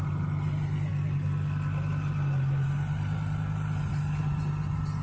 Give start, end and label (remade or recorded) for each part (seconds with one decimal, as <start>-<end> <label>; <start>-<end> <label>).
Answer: 0.0-5.0 recorded